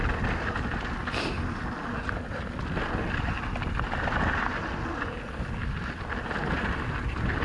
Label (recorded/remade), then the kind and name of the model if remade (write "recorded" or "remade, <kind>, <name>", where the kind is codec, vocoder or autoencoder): recorded